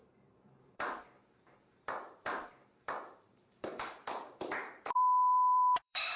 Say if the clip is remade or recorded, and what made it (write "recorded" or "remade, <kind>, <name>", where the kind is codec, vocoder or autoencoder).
remade, vocoder, BigVGAN v2